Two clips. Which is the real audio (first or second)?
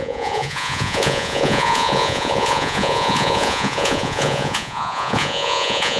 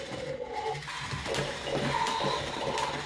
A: second